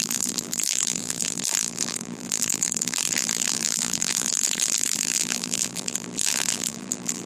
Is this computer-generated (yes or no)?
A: yes